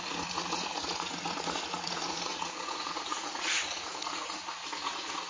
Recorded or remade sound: remade